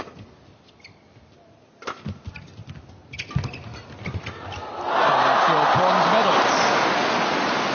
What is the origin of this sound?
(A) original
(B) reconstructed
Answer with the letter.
A